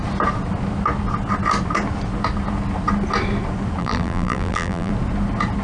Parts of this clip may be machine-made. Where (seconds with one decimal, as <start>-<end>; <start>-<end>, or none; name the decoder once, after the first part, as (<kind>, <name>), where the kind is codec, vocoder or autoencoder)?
3.8-4.9 (vocoder, BigVGAN v2)